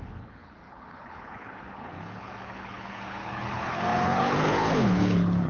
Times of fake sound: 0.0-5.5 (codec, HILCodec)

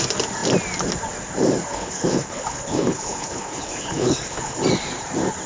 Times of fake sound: 1.7-4.6 (codec, HILCodec)